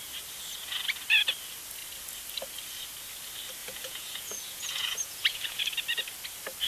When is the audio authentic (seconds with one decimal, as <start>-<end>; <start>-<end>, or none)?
0.0-3.6; 5.6-6.7